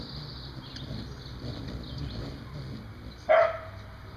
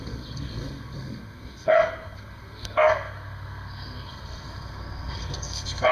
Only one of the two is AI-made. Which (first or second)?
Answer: second